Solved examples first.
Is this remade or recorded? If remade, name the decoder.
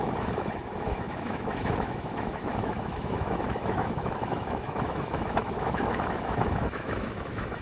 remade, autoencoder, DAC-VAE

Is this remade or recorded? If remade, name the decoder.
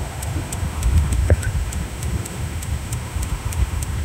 remade, autoencoder, DAC-VAE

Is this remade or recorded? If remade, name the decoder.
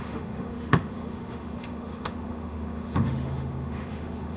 remade, autoencoder, DAC-VAE